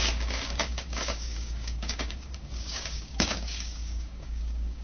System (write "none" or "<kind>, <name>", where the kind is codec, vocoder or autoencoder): codec, DAC